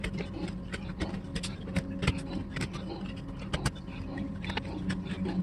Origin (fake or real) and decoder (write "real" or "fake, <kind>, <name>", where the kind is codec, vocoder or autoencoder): fake, vocoder, BigVGAN v2